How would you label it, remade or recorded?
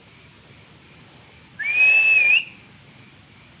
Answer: recorded